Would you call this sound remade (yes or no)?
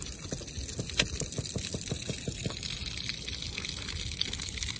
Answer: no